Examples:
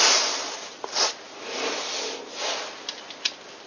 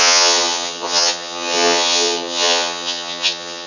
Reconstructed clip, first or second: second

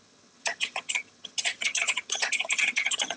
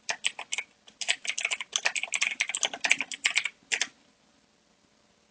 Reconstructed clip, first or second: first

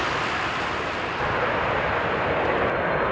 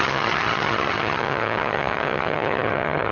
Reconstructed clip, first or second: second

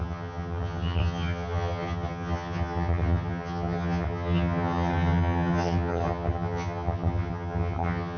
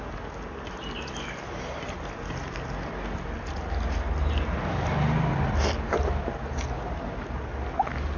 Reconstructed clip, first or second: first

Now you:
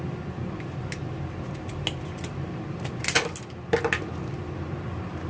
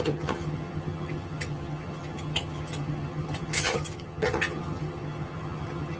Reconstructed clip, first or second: second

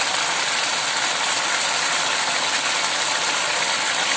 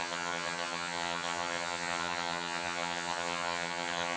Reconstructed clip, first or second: second